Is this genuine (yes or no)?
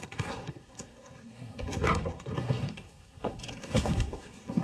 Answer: no